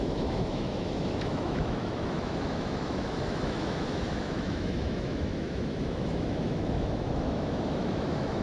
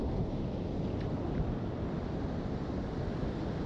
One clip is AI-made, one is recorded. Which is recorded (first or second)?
second